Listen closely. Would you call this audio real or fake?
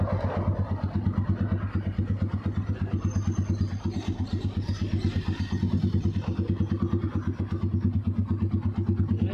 real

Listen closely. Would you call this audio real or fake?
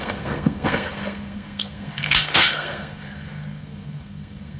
fake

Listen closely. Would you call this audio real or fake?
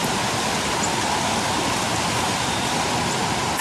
real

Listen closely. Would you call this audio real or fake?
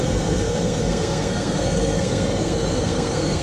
fake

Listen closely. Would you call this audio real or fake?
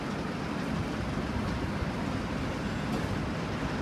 real